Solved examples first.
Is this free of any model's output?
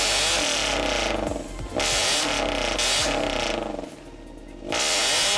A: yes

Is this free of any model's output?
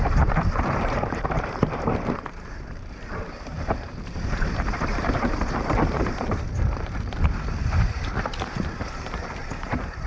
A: no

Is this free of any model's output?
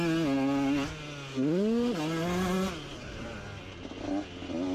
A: yes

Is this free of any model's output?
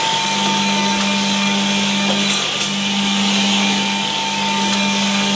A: no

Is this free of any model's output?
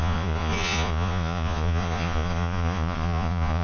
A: no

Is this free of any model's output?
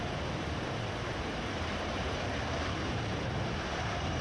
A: no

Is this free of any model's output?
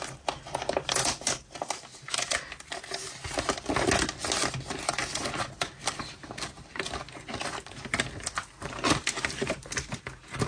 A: yes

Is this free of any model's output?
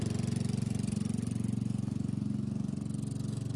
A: yes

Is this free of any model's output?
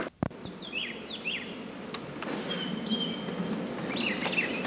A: yes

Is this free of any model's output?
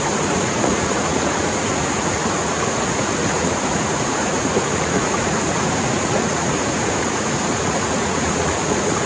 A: no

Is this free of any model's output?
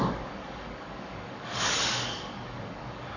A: no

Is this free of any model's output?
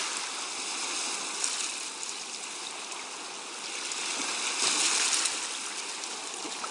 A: yes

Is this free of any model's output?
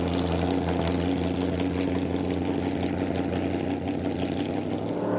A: yes